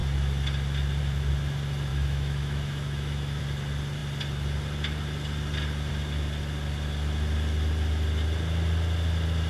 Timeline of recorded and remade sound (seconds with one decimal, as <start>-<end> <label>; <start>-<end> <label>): 0.0-1.9 recorded; 1.9-3.4 remade; 3.4-9.5 recorded